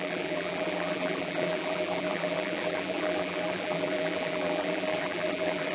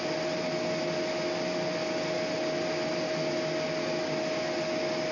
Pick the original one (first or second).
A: second